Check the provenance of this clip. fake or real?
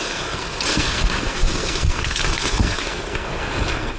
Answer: fake